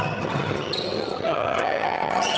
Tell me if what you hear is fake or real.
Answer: fake